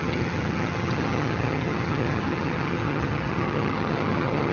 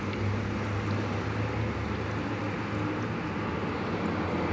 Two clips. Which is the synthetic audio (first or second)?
first